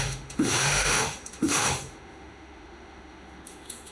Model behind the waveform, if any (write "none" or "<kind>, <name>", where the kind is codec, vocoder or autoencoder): autoencoder, DAC-VAE